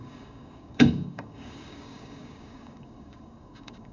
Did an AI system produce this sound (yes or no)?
yes